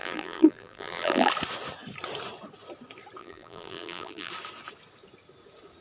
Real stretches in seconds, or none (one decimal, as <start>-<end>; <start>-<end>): 1.3-3.2; 4.3-5.8